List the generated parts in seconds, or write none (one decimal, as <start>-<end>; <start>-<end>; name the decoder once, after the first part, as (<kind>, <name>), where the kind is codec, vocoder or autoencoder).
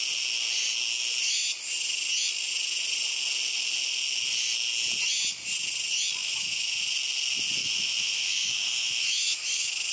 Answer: 6.2-6.8 (autoencoder, DAC-VAE); 7.6-9.9